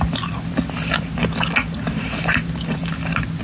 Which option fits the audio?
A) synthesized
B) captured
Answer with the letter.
B